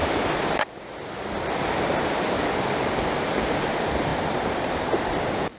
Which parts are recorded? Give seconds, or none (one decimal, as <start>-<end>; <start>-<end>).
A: 0.0-5.6